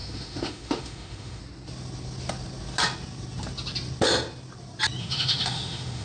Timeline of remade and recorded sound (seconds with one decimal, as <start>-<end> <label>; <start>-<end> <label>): 0.0-1.4 remade; 1.4-5.0 recorded; 5.0-6.0 remade